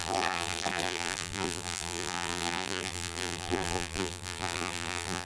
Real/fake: fake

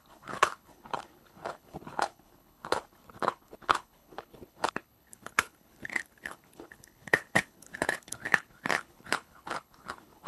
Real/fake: fake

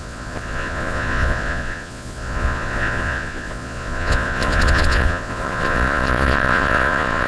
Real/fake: fake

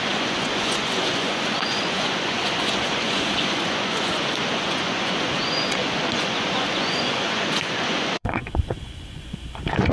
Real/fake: fake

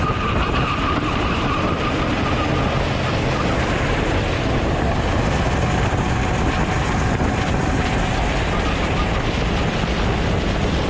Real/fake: real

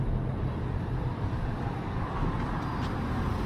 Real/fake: real